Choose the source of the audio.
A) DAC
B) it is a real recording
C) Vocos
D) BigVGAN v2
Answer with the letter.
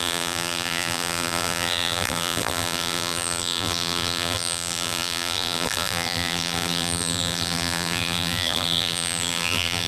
D